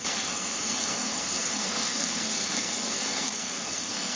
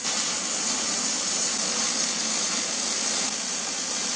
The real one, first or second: second